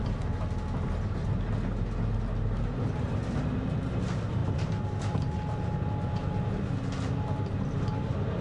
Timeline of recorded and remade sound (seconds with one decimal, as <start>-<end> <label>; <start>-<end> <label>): 0.0-8.4 recorded